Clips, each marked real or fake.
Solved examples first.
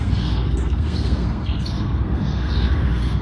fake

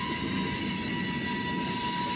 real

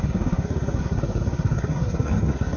fake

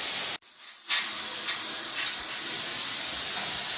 real